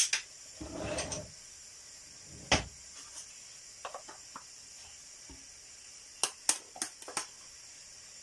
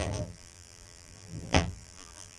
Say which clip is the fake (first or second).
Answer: second